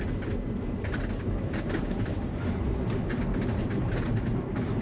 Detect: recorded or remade recorded